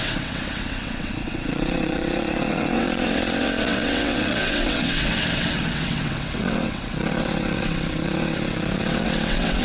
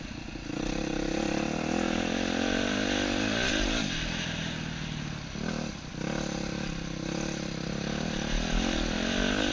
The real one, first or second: second